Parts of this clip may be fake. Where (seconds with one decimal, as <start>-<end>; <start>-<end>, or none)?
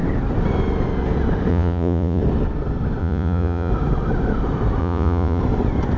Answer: 1.5-2.2; 3.0-3.7; 4.8-5.4